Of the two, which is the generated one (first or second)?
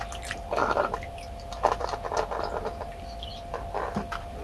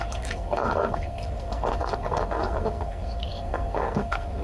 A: second